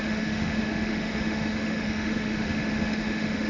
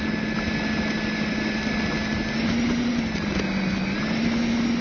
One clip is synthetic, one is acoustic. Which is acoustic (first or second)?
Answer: second